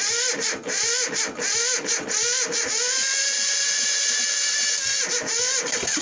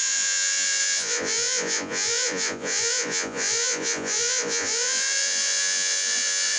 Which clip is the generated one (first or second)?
second